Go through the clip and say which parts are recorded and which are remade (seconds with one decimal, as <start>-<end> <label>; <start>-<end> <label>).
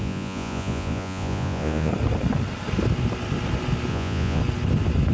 0.0-1.9 remade; 1.9-3.9 recorded; 3.9-4.4 remade; 4.4-5.1 recorded